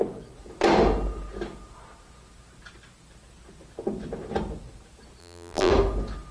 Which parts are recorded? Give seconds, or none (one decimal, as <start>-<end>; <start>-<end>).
0.0-5.2; 5.7-6.3